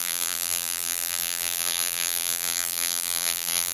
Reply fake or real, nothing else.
fake